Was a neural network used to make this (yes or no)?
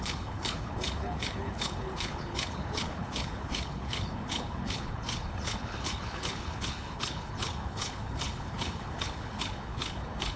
yes